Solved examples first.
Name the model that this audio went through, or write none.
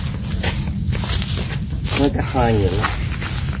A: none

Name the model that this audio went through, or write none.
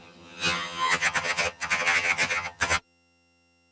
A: vocoder, HiFi-GAN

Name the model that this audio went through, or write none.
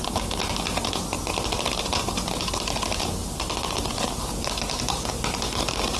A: none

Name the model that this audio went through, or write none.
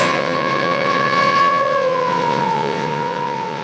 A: vocoder, WaveNeXt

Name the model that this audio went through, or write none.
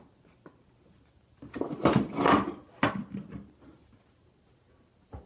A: none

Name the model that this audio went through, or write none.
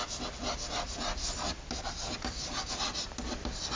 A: none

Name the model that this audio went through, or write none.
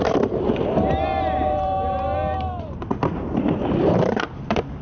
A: vocoder, BigVGAN v2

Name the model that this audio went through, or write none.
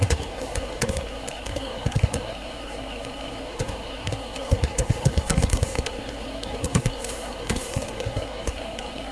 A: codec, SNAC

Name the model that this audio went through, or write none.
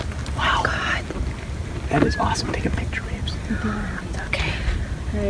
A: none